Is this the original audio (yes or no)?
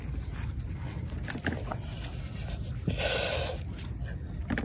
yes